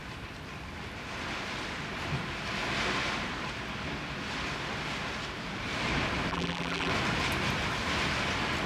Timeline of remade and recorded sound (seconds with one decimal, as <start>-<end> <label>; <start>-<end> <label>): 0.0-6.3 recorded; 6.3-6.9 remade; 6.9-8.7 recorded